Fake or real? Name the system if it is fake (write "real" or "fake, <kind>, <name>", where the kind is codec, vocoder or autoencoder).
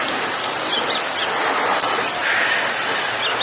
real